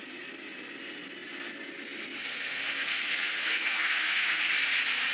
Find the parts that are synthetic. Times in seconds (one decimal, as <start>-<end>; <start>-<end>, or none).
2.3-4.4